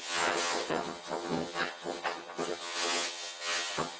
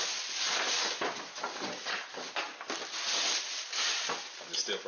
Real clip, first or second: second